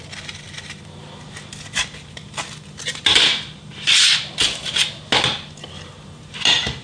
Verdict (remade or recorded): recorded